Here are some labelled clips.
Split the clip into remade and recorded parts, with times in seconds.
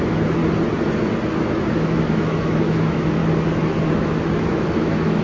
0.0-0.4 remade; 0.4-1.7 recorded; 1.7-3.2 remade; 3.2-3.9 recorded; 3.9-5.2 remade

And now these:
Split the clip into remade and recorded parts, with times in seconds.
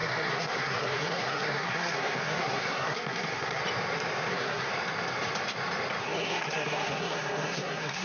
0.0-3.6 remade; 3.6-4.3 recorded; 4.3-4.7 remade; 4.7-6.0 recorded; 6.0-8.0 remade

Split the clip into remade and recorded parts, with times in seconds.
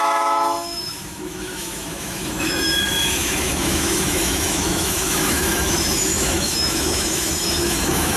0.0-8.2 remade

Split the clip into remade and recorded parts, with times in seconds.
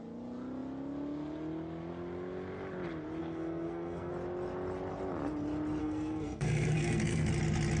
0.0-3.2 recorded; 3.2-4.1 remade; 4.1-5.8 recorded; 5.8-7.3 remade; 7.3-7.8 recorded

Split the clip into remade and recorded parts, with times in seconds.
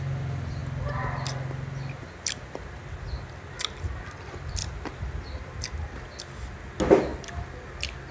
0.0-8.1 recorded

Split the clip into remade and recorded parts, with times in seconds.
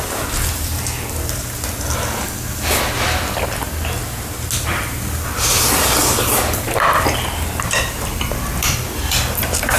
0.0-5.5 recorded; 5.5-6.6 remade; 6.6-9.8 recorded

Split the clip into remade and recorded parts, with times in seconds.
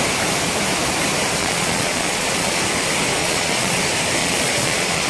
0.0-1.4 recorded; 1.4-2.6 remade; 2.6-3.2 recorded; 3.2-3.8 remade; 3.8-4.2 recorded; 4.2-5.1 remade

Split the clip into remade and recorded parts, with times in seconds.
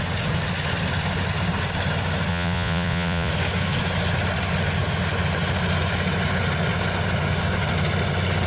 0.0-2.3 recorded; 2.3-3.3 remade; 3.3-8.5 recorded